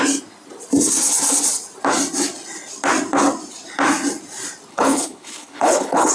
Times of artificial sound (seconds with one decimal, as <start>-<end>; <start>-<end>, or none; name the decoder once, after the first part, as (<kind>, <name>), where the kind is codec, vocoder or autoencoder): 4.7-6.1 (codec, HILCodec)